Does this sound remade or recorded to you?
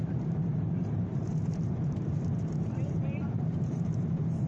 remade